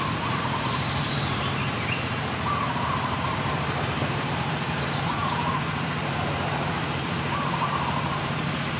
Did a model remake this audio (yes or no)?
yes